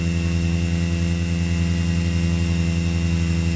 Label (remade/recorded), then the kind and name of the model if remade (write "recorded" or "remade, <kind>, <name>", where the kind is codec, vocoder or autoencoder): recorded